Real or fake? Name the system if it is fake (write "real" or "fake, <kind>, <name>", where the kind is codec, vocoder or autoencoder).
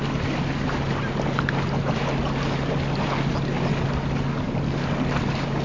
real